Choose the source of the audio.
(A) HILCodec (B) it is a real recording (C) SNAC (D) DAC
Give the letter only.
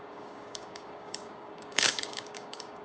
D